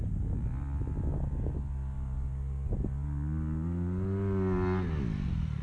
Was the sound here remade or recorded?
recorded